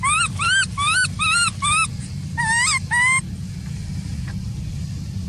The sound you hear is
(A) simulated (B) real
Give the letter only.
B